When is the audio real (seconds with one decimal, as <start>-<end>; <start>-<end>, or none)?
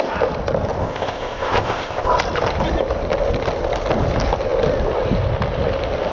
0.0-0.8; 2.1-6.1